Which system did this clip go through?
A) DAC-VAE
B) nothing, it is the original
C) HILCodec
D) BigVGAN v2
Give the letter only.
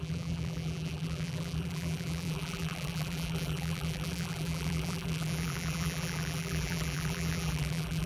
D